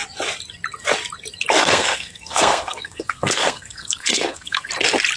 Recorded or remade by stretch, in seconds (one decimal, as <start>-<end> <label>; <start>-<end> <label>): 0.0-1.6 recorded; 1.6-4.7 remade; 4.7-5.2 recorded